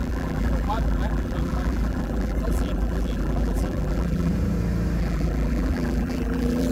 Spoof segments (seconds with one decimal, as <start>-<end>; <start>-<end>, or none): 0.0-4.3; 5.0-6.7

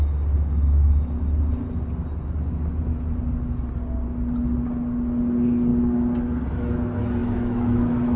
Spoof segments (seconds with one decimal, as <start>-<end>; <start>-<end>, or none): 7.2-8.2

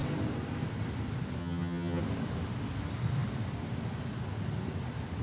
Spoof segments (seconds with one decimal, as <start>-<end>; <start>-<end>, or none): 1.4-2.0